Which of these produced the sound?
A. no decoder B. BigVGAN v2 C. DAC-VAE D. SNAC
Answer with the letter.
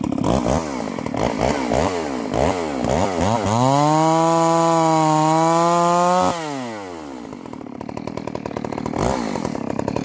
A